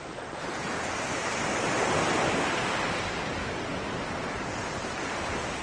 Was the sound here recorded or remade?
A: recorded